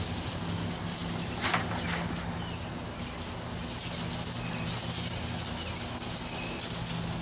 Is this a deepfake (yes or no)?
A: no